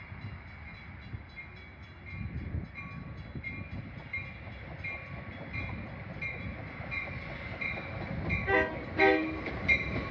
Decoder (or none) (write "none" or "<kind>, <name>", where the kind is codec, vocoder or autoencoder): none